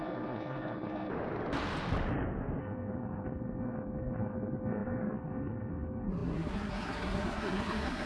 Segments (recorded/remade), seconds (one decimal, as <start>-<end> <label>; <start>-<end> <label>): 0.0-1.1 remade; 1.1-2.6 recorded; 2.6-8.1 remade